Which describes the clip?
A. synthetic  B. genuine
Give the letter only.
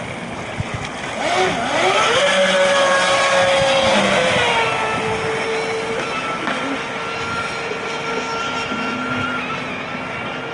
B